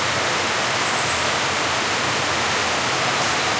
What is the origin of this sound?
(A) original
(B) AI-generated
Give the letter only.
A